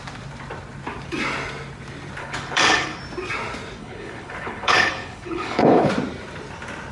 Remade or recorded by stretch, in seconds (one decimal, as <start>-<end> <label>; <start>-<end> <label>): 0.0-2.2 recorded; 2.2-3.0 remade; 3.0-3.8 recorded; 3.8-5.9 remade; 5.9-6.9 recorded